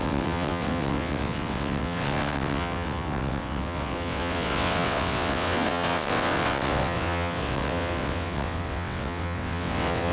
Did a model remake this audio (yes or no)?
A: yes